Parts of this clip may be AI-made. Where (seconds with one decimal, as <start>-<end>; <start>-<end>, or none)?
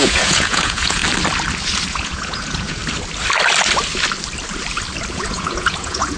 0.0-1.0; 1.9-2.8; 5.1-6.2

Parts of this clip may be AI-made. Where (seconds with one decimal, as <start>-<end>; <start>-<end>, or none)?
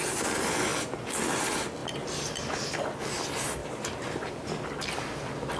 1.8-2.3; 3.6-4.3